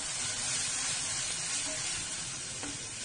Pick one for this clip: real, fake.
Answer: real